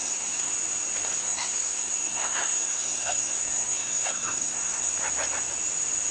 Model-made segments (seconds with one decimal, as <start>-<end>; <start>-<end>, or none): 0.0-0.5; 1.2-4.9